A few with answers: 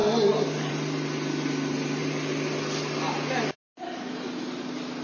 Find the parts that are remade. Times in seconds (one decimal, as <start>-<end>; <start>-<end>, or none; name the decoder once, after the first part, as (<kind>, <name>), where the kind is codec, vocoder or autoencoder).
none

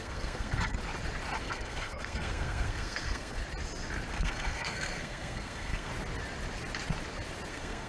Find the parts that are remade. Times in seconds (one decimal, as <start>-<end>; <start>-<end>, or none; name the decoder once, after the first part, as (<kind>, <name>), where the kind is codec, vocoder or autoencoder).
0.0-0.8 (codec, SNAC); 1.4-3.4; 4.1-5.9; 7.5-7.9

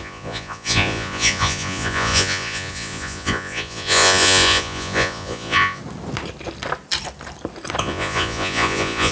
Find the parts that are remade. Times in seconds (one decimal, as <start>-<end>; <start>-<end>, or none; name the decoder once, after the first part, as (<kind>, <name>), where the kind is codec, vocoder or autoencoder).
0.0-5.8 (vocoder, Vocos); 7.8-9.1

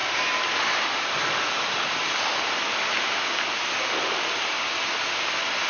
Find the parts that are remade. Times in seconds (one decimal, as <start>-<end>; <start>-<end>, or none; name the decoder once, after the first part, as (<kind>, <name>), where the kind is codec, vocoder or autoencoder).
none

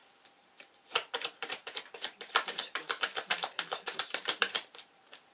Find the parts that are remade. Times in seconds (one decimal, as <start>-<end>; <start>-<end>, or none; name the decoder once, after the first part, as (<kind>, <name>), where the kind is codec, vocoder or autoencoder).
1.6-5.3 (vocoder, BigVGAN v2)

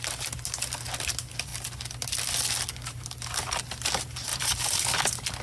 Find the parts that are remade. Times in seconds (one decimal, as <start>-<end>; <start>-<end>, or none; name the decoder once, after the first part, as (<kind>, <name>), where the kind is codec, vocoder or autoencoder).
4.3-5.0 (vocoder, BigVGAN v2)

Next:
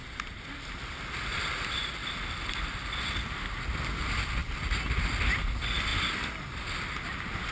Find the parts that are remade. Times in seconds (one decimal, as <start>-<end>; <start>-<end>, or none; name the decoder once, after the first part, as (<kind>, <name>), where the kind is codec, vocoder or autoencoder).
none

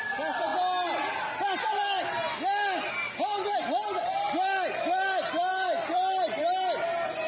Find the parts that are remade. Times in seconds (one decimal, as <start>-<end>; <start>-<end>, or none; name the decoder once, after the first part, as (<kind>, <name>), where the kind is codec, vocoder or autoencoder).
none